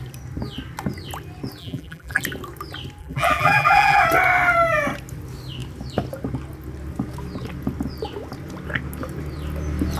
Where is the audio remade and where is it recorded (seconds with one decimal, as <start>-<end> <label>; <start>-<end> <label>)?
0.0-1.6 recorded; 1.6-2.2 remade; 2.2-3.0 recorded; 3.0-4.0 remade; 4.0-10.0 recorded